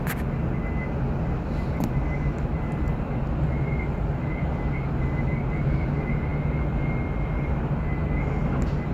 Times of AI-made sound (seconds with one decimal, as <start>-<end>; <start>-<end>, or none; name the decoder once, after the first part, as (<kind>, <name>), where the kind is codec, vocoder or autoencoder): none